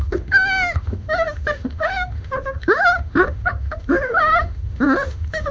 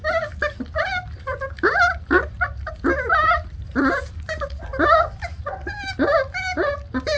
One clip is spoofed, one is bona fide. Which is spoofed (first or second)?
first